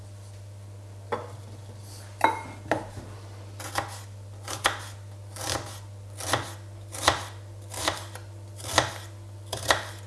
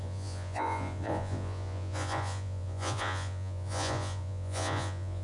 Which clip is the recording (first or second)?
first